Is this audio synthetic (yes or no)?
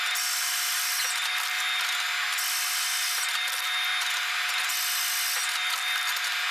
no